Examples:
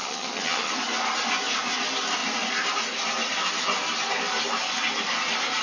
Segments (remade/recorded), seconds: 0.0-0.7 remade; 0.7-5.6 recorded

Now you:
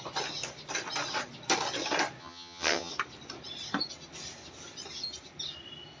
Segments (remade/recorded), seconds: 0.0-2.2 recorded; 2.2-2.9 remade; 2.9-6.0 recorded

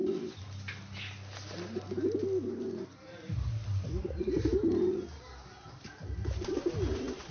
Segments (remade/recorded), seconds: 0.0-7.3 recorded

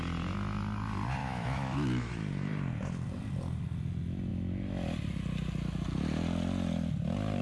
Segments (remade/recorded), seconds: 0.0-1.2 recorded; 1.2-2.1 remade; 2.1-7.4 recorded

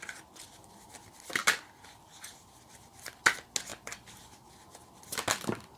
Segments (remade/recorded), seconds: 0.0-5.8 recorded

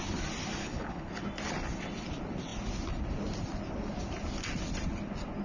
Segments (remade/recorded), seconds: 0.0-0.6 recorded; 0.6-1.1 remade; 1.1-5.4 recorded

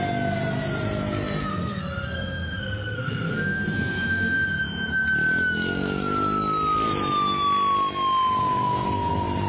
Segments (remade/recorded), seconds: 0.0-1.5 recorded; 1.5-4.5 remade; 4.5-9.5 recorded